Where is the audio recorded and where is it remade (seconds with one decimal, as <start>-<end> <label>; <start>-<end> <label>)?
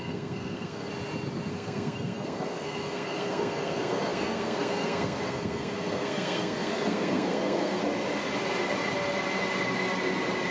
0.0-0.9 remade; 0.9-1.5 recorded; 1.5-7.8 remade; 7.8-10.5 recorded